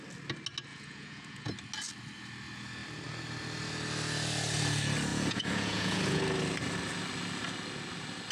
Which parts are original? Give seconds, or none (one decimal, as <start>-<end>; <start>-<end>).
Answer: 0.0-0.7; 1.5-5.1; 6.2-8.3